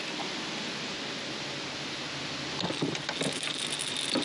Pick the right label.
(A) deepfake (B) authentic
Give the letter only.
B